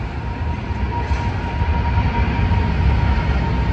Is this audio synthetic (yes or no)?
no